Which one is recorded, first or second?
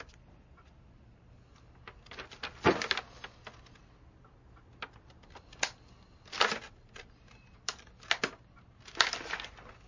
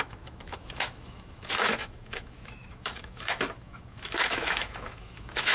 first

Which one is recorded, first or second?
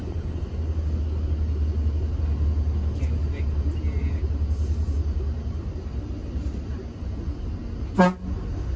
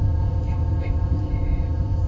first